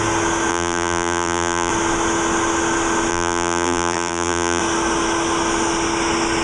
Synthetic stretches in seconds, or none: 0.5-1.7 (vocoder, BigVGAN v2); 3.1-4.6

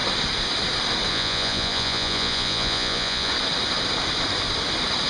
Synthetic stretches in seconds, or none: 1.1-3.3 (vocoder, Vocos)

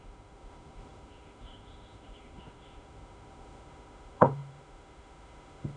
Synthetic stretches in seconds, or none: 0.0-5.8 (autoencoder, DAC-VAE)

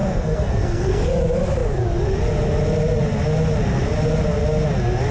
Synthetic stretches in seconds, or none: 0.0-1.1 (codec, SNAC)